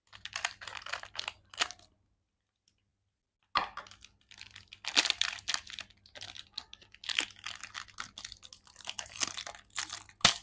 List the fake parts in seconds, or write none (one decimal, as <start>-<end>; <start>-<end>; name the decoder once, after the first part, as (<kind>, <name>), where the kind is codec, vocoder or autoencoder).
none